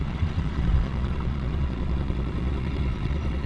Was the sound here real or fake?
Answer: fake